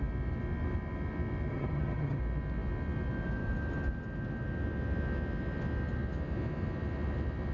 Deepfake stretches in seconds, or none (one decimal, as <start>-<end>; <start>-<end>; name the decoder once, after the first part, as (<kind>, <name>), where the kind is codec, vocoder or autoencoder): 1.5-2.2 (vocoder, HiFi-GAN)